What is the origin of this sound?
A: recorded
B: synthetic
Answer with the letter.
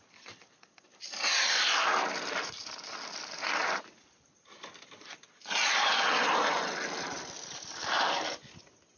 B